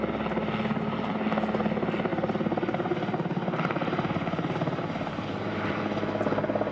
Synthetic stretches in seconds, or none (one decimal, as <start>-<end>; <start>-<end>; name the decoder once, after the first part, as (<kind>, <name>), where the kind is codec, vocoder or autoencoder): 2.1-5.8 (vocoder, BigVGAN v2)